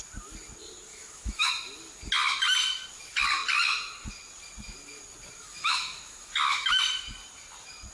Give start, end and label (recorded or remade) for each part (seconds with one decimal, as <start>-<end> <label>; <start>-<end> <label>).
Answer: 0.0-0.9 recorded; 0.9-1.5 remade; 1.5-5.4 recorded; 5.4-6.8 remade; 6.8-7.9 recorded